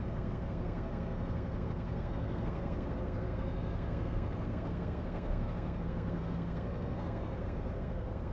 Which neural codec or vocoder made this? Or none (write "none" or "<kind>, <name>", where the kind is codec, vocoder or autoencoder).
codec, SNAC